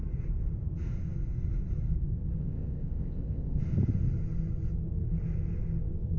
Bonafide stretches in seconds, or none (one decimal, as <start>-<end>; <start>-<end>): 0.0-2.4; 3.6-6.2

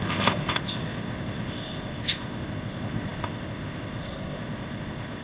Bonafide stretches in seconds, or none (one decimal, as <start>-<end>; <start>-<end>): none